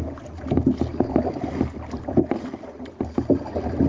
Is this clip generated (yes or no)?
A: no